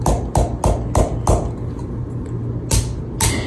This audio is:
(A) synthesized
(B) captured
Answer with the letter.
B